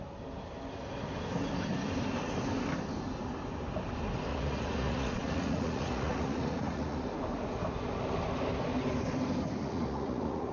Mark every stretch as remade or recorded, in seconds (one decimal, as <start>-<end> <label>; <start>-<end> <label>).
0.0-4.3 recorded; 4.3-7.1 remade; 7.1-9.6 recorded; 9.6-10.5 remade